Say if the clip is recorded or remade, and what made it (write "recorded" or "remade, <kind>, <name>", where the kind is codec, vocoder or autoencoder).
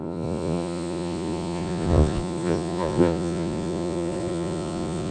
remade, vocoder, Vocos